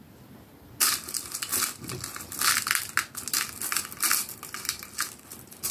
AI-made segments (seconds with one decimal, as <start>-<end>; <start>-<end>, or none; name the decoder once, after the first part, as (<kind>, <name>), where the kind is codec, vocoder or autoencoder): 0.0-1.5 (vocoder, BigVGAN v2); 4.6-5.7